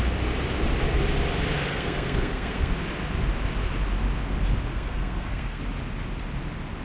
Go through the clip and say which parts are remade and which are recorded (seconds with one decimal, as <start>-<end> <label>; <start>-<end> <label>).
0.0-1.7 recorded; 1.7-2.7 remade; 2.7-4.7 recorded; 4.7-5.6 remade; 5.6-6.8 recorded